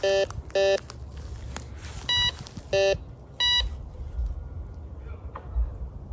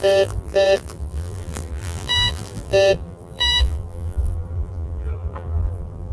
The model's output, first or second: second